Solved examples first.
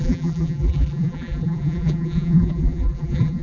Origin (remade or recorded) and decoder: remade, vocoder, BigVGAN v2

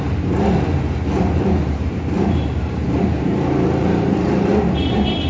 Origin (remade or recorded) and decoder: remade, vocoder, BigVGAN v2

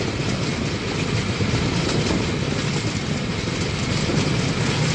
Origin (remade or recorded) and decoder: recorded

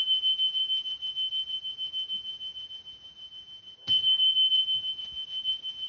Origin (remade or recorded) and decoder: remade, vocoder, BigVGAN v2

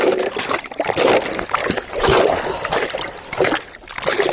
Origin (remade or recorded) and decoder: recorded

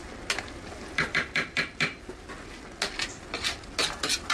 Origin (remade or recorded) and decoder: recorded